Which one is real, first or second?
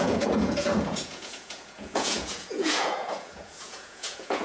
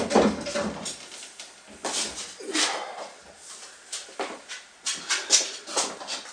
second